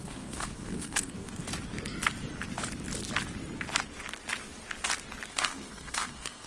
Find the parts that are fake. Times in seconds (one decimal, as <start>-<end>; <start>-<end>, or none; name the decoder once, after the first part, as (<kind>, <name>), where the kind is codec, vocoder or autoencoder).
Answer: 0.0-1.4 (codec, SNAC); 5.3-6.5